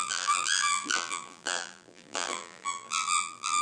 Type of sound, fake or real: fake